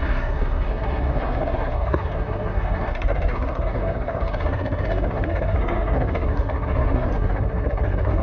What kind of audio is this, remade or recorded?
remade